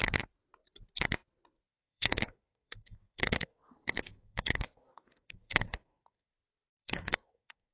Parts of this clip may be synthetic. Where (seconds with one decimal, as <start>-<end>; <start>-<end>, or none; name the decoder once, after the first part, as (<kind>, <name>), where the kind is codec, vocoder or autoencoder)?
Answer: 1.7-6.3 (codec, SNAC); 6.7-7.7